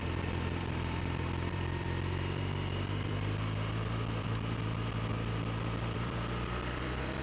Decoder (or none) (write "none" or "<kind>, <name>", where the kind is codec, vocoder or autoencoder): vocoder, BigVGAN v2